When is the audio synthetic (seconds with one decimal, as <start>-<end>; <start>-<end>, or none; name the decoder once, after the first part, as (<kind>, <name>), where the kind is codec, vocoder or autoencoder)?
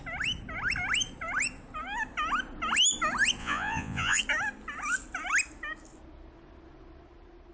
3.4-4.2 (vocoder, Vocos)